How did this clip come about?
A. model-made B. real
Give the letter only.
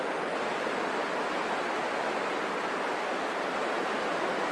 B